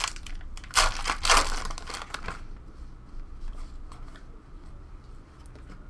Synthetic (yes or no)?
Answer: no